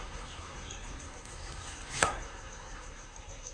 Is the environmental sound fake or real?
fake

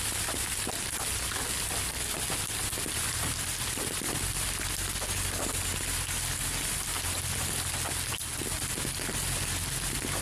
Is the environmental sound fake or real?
real